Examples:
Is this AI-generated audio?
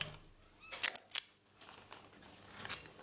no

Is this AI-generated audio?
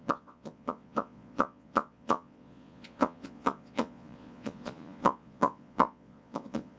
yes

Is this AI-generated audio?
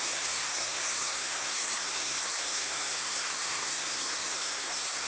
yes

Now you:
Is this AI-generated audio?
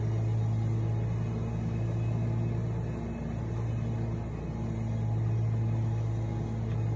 no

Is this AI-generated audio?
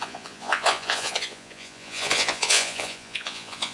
yes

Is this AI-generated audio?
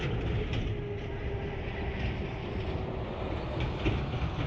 no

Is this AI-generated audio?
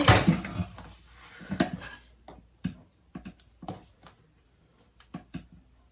no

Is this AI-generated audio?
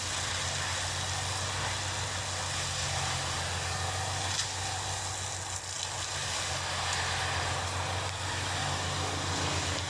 no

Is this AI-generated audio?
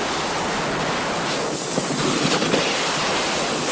no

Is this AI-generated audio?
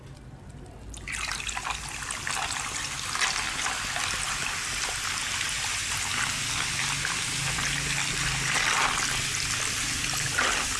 no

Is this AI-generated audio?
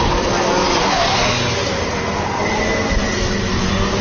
no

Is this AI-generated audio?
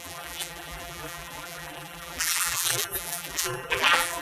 yes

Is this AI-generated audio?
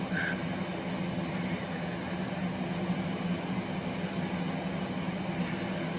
no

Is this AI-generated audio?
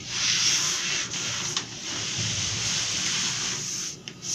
no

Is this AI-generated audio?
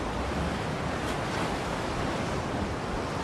no